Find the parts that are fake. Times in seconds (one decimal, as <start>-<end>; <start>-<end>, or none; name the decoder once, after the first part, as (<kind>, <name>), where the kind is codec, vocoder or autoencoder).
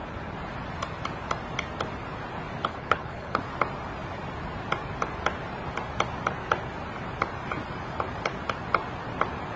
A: 2.7-3.4 (codec, HILCodec)